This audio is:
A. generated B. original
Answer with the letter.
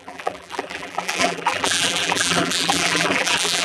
A